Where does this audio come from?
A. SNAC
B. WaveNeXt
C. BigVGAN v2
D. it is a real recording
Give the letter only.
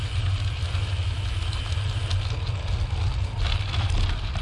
D